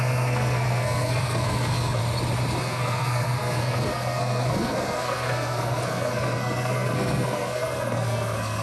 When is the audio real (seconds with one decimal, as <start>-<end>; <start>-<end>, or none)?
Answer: 2.0-2.6